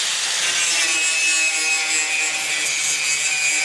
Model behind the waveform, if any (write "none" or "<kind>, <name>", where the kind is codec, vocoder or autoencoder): none